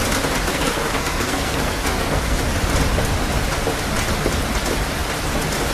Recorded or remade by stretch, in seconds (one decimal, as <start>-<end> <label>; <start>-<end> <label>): 0.0-0.5 recorded; 0.5-2.4 remade; 2.4-5.7 recorded